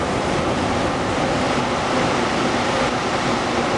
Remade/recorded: recorded